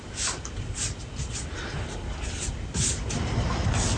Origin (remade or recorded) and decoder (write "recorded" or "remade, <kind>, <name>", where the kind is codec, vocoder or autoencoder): recorded